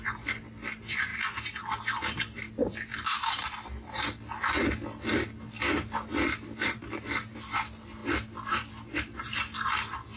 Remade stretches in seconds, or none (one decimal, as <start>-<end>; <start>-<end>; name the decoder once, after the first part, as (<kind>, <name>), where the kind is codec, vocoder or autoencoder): none